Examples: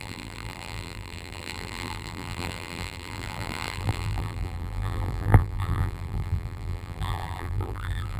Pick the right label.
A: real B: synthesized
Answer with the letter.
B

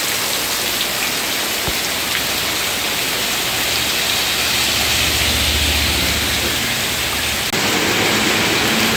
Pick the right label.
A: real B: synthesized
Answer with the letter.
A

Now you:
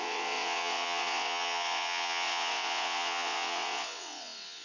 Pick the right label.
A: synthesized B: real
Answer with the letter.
A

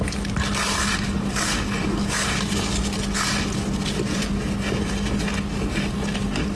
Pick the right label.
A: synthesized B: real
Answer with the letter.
B